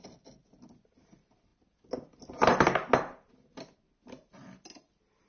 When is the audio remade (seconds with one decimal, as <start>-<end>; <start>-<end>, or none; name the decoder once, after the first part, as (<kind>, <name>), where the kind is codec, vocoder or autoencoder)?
none